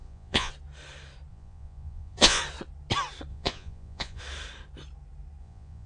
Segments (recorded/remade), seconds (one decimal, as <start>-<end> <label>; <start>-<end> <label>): 0.0-0.5 remade; 0.5-1.3 recorded; 1.3-2.4 remade; 2.4-3.3 recorded; 3.3-4.2 remade; 4.2-5.4 recorded; 5.4-5.9 remade